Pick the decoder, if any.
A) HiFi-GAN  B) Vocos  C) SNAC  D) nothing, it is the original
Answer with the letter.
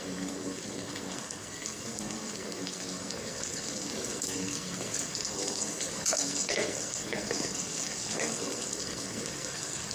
C